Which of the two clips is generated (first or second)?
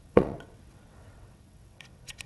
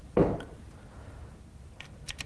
first